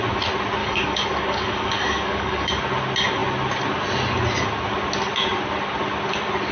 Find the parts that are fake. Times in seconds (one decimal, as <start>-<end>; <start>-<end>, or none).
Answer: 0.6-2.5